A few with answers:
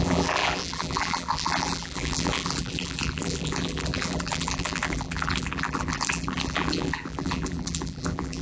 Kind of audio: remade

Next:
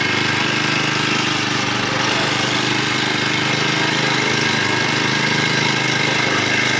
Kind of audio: recorded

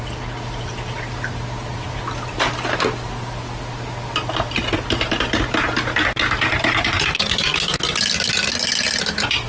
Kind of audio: recorded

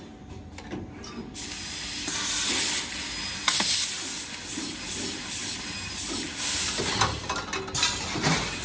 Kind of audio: recorded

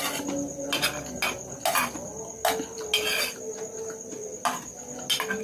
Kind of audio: recorded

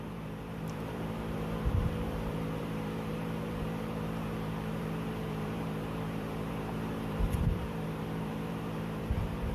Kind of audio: remade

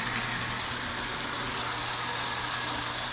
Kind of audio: recorded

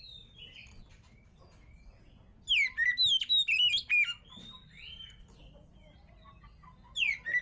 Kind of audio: recorded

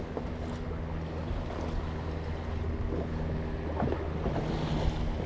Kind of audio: recorded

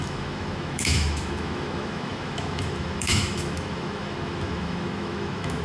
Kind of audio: remade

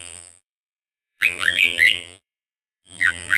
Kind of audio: remade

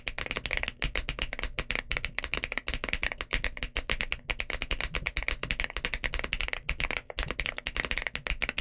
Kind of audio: recorded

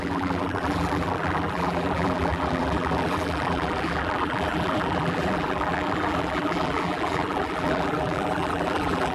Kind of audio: remade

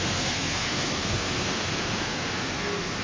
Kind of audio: remade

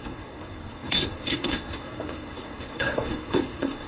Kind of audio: remade